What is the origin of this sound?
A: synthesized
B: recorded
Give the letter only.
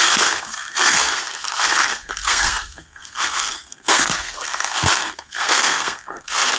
A